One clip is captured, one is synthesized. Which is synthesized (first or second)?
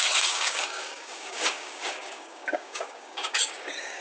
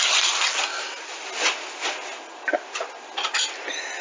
first